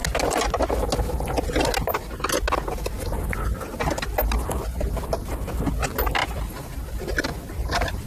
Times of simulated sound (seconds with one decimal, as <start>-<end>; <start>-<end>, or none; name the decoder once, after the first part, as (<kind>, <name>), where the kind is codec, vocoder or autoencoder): 6.2-8.1 (vocoder, BigVGAN v2)

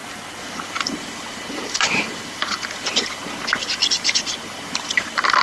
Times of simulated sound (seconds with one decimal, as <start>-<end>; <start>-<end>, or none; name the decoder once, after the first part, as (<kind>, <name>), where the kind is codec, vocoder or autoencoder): none

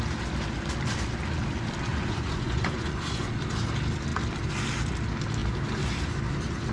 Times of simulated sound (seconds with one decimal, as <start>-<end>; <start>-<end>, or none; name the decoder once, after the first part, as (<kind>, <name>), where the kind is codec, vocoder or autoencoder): 1.9-3.3 (vocoder, Vocos)

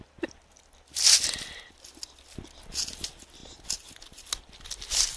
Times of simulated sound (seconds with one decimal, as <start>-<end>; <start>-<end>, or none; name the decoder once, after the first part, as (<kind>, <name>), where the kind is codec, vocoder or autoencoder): none

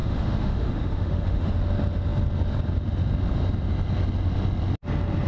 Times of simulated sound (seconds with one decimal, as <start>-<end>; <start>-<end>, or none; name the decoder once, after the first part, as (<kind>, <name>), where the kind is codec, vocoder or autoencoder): 0.0-1.5 (autoencoder, DAC-VAE)

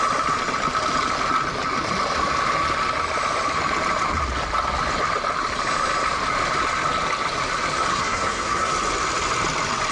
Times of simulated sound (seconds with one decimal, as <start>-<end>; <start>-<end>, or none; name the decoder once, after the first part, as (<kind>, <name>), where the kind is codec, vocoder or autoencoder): 7.9-8.7 (codec, SNAC)

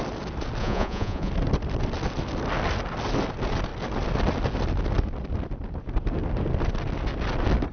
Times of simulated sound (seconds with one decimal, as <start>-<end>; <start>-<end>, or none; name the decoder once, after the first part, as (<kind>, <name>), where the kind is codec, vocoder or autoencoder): 0.6-1.3 (vocoder, Vocos)

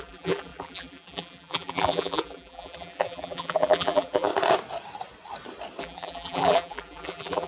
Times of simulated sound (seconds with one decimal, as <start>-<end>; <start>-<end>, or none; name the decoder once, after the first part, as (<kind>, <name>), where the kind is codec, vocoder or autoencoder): 0.0-4.3 (vocoder, BigVGAN v2); 5.8-7.5